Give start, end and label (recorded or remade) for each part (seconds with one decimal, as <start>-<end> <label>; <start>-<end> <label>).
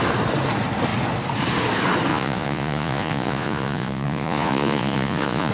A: 0.0-2.1 recorded; 2.1-5.5 remade